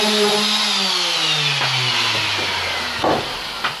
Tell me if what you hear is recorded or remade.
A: recorded